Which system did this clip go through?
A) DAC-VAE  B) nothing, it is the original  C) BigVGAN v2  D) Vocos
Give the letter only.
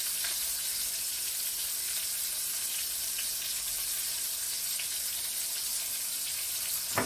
B